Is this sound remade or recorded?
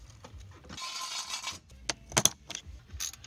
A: recorded